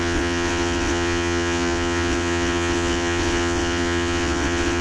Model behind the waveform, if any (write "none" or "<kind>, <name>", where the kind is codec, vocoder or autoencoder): vocoder, WaveNeXt